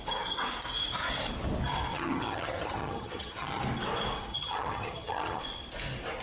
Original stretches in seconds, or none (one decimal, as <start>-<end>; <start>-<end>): 0.0-1.9; 3.6-4.3; 5.4-6.2